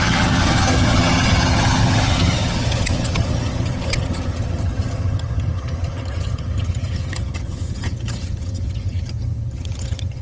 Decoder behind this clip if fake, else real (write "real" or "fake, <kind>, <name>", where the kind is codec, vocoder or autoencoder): fake, vocoder, HiFi-GAN